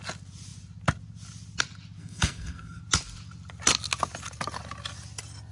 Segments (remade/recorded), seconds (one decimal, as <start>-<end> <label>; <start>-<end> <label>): 0.0-2.0 recorded; 2.0-2.8 remade; 2.8-5.5 recorded